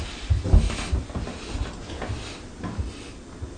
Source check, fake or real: real